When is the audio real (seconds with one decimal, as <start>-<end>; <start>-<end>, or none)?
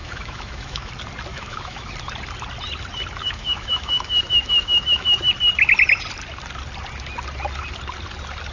0.9-1.3; 1.9-3.2; 5.3-8.5